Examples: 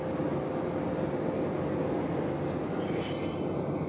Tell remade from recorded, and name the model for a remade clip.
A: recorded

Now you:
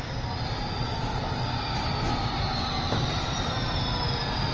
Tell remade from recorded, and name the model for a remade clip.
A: recorded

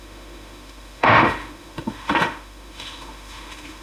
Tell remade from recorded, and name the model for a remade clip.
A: remade, autoencoder, DAC-VAE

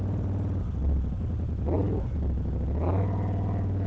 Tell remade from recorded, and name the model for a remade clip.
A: recorded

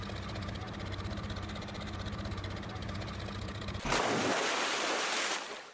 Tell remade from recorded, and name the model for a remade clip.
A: recorded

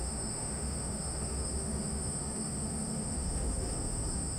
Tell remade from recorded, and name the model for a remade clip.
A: remade, autoencoder, DAC-VAE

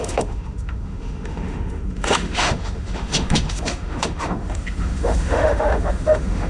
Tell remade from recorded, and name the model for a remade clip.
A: remade, autoencoder, DAC-VAE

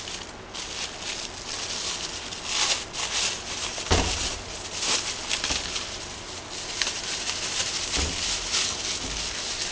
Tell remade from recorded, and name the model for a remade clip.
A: recorded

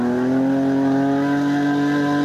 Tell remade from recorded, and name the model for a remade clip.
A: recorded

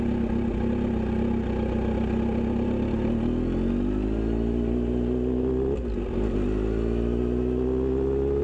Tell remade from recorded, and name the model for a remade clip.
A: recorded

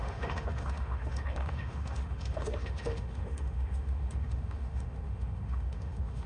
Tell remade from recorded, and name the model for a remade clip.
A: remade, autoencoder, DAC-VAE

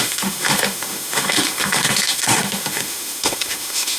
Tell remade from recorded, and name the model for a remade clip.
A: remade, autoencoder, DAC-VAE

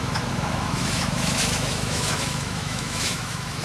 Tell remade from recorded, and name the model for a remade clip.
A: remade, autoencoder, DAC-VAE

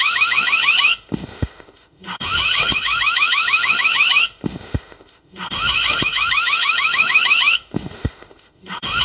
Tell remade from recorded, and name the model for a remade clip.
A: remade, autoencoder, DAC-VAE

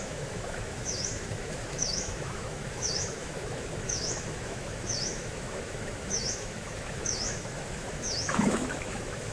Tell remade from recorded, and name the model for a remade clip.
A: remade, autoencoder, DAC-VAE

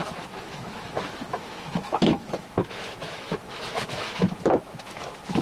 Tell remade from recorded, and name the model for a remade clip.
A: remade, autoencoder, DAC-VAE